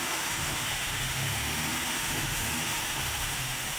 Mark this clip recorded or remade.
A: remade